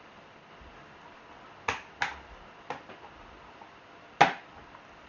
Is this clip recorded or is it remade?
recorded